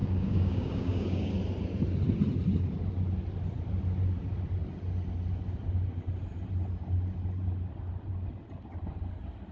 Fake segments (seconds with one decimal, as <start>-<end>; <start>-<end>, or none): 0.0-1.3